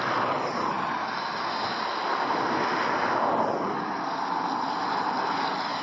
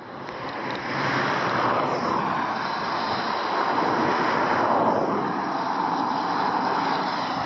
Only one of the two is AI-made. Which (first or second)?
second